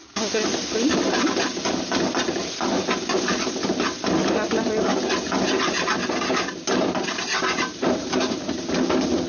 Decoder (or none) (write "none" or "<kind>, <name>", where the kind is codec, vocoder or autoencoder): none